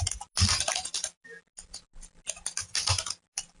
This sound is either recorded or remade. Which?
recorded